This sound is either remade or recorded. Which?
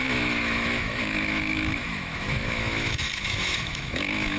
remade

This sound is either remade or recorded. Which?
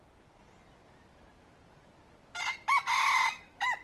recorded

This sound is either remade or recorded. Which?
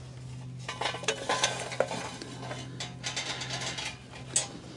recorded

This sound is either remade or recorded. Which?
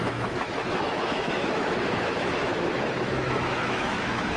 remade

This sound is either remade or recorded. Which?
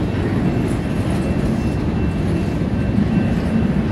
recorded